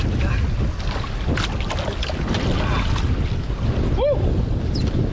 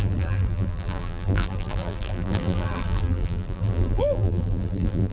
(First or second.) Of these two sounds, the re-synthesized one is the second